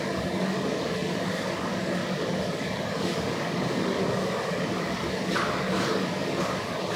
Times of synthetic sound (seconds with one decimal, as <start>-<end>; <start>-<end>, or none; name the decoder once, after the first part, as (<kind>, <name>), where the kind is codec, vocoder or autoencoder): 0.0-7.0 (codec, DAC)